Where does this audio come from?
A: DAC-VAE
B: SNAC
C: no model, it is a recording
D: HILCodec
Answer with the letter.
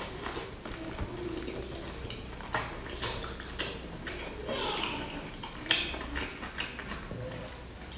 C